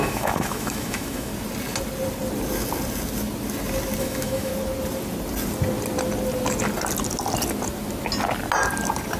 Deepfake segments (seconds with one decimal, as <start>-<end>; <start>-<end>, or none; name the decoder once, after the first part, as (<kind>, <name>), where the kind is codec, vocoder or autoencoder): 0.0-1.3 (autoencoder, DAC-VAE); 4.0-4.5